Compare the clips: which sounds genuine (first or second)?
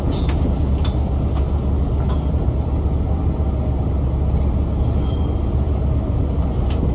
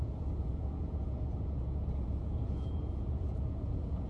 first